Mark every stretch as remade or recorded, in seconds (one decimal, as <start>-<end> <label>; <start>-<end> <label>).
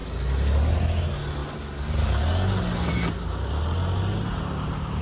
0.0-5.0 recorded